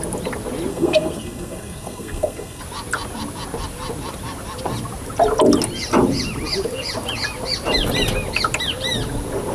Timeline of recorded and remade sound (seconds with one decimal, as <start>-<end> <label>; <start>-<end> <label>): 0.0-0.7 recorded; 0.7-2.6 remade; 2.6-9.5 recorded